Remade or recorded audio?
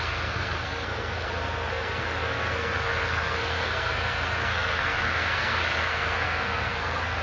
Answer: remade